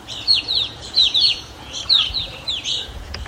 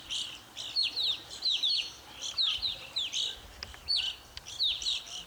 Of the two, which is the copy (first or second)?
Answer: first